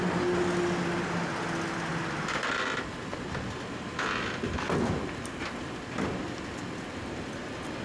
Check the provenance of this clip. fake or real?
real